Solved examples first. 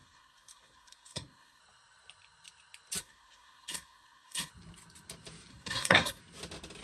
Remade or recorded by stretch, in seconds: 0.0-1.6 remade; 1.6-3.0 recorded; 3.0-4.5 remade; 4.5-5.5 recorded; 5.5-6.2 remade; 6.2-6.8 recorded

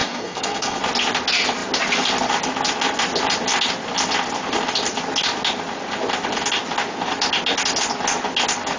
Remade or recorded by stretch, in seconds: 0.0-0.8 remade; 0.8-8.8 recorded

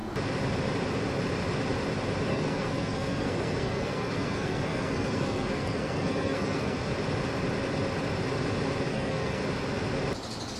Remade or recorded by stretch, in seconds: 0.0-2.3 recorded; 2.3-6.9 remade; 6.9-8.9 recorded; 8.9-9.4 remade; 9.4-10.6 recorded

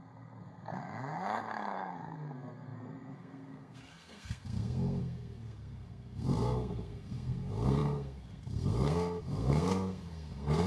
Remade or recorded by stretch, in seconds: 0.0-10.7 remade